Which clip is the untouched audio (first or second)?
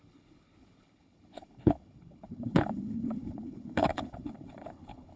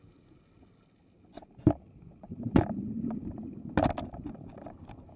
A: second